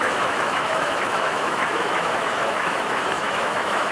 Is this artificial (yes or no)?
yes